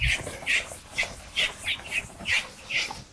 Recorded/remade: recorded